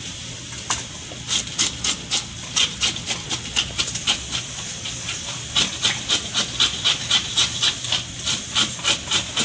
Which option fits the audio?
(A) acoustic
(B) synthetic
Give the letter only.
A